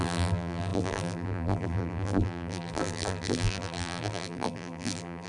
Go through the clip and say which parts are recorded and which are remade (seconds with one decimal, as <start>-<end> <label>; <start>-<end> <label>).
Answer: 0.0-5.3 remade